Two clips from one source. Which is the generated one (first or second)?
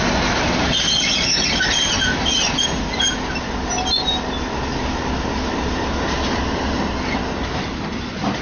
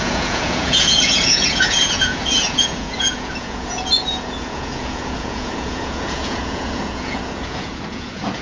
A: second